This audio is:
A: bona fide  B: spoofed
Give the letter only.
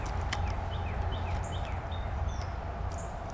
A